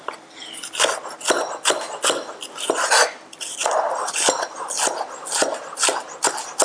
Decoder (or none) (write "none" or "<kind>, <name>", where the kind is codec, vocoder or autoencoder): none